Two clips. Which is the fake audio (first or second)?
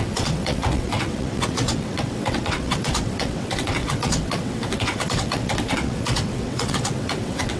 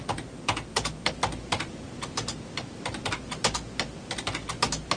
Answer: first